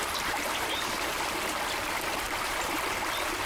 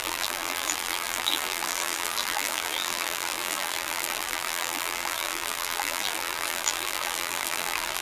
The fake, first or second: second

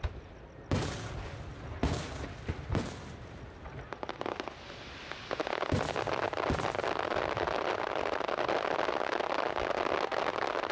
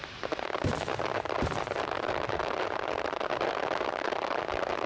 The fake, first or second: second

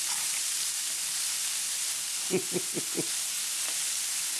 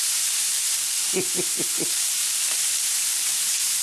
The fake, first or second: second